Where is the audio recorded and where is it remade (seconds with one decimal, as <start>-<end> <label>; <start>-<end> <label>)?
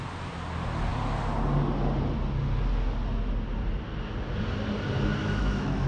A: 0.0-5.2 recorded; 5.2-5.9 remade